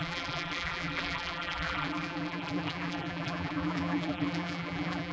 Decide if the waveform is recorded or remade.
remade